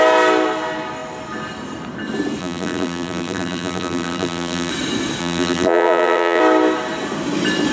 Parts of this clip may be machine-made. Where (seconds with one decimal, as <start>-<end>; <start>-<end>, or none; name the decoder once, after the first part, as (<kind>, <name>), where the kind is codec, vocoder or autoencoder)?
2.4-4.7 (vocoder, BigVGAN v2); 5.2-6.4